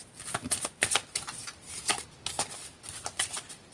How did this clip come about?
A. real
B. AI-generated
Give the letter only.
A